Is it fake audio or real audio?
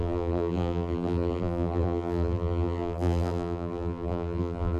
fake